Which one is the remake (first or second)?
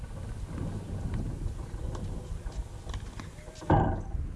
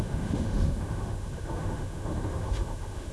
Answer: second